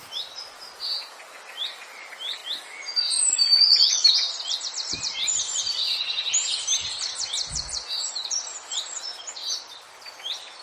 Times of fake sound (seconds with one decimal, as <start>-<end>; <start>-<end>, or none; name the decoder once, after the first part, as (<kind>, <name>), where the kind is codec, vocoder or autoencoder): 0.0-2.4 (vocoder, BigVGAN v2); 4.1-9.4